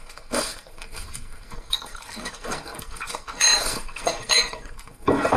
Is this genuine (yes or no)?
no